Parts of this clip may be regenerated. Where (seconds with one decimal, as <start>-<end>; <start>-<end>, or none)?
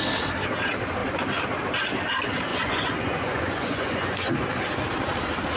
2.5-4.3